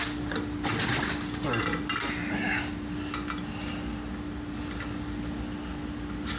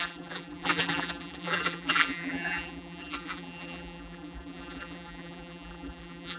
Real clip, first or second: first